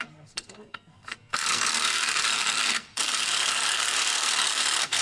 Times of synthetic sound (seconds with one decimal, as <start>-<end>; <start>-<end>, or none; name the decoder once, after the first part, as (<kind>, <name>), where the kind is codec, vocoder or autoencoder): 0.0-5.0 (codec, SNAC)

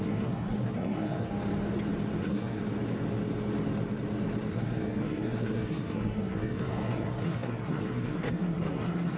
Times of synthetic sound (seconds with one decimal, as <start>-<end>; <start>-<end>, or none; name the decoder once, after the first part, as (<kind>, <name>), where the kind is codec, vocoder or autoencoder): 0.0-1.3 (codec, SNAC); 2.2-2.6; 4.5-9.2

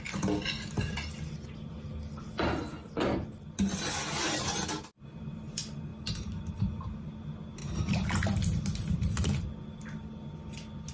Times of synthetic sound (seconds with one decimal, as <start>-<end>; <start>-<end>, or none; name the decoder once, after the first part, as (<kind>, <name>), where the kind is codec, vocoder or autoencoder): 5.9-6.5 (vocoder, BigVGAN v2); 7.6-10.5

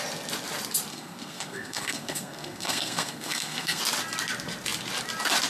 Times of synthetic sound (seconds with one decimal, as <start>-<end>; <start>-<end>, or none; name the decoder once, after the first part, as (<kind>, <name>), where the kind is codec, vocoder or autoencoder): 0.9-3.8 (codec, SNAC)

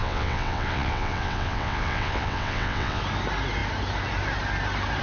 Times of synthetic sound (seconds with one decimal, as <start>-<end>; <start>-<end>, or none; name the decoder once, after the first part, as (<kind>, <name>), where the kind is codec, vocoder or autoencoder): 0.0-3.0 (vocoder, WaveNeXt)

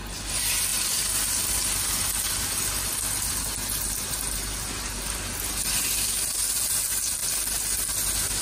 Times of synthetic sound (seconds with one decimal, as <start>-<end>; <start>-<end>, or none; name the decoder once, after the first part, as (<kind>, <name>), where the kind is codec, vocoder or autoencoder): none

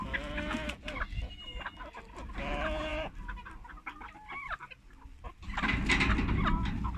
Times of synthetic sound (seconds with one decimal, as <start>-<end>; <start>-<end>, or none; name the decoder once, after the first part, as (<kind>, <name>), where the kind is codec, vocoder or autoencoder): none